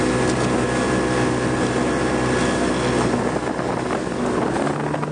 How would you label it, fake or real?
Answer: real